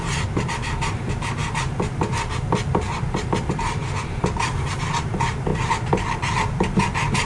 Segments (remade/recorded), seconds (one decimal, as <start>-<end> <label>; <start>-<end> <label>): 0.0-7.3 remade